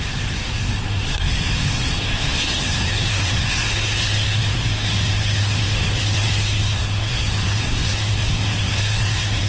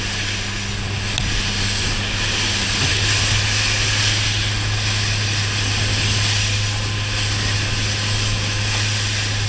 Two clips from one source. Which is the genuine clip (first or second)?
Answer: second